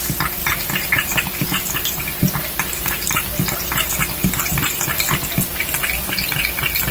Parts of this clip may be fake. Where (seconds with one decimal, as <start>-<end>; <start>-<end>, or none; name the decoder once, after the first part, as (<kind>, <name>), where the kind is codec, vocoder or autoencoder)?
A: 0.4-1.1 (vocoder, BigVGAN v2)